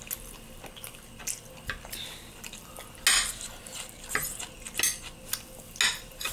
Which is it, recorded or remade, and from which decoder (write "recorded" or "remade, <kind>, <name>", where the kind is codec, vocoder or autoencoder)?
recorded